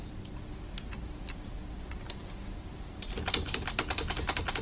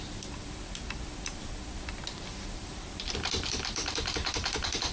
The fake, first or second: second